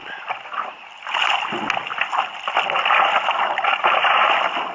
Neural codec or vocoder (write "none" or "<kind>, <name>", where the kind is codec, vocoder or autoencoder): none